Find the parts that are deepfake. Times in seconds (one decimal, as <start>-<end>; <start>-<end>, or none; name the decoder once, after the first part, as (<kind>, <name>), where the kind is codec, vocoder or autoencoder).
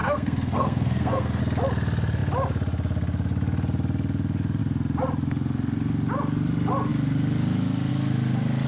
0.0-1.4 (codec, SNAC)